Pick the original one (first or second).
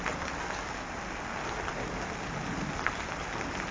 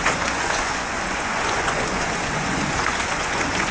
first